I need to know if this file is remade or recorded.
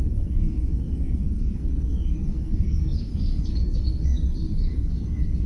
remade